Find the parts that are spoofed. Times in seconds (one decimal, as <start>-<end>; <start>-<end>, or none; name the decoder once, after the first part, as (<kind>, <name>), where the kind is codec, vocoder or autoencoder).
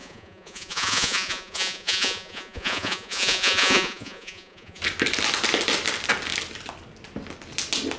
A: 0.0-4.8 (vocoder, Vocos)